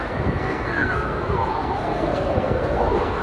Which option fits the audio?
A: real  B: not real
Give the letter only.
B